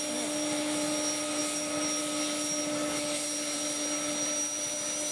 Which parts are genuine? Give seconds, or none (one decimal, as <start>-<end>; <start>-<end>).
0.0-5.1

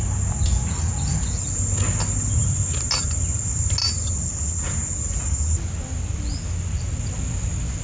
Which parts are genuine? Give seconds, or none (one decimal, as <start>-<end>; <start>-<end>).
0.0-7.8

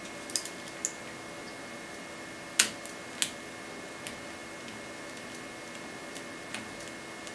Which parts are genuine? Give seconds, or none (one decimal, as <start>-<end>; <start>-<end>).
0.0-7.3

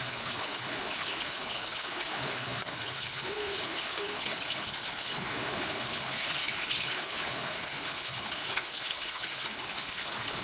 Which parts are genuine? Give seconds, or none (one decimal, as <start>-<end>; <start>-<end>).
none

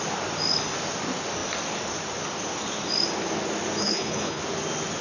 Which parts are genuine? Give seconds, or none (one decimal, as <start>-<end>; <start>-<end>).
0.0-3.8; 4.4-5.0